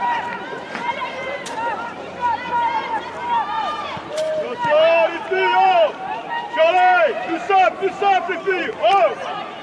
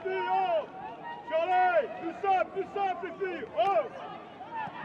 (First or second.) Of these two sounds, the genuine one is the second